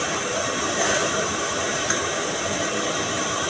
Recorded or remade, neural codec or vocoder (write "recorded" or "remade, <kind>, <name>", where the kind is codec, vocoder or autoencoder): remade, vocoder, BigVGAN v2